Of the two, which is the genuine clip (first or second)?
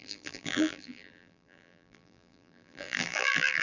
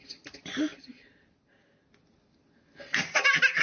second